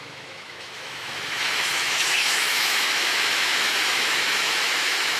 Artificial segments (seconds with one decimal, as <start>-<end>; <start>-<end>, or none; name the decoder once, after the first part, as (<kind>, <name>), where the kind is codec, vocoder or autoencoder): 0.0-5.2 (autoencoder, DAC-VAE)